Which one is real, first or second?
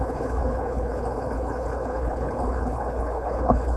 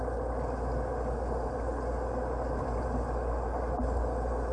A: second